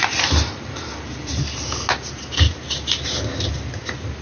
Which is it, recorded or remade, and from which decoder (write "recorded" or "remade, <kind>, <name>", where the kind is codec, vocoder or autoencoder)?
recorded